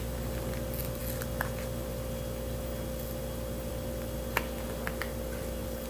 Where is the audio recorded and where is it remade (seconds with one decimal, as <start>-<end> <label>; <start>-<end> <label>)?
0.0-5.9 recorded